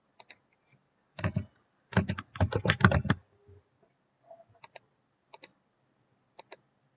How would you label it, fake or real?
real